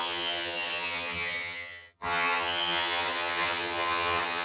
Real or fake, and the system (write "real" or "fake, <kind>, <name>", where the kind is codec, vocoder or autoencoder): fake, vocoder, HiFi-GAN